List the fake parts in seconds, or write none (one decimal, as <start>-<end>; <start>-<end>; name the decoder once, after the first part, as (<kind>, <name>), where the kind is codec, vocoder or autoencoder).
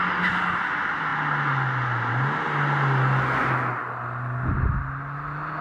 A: none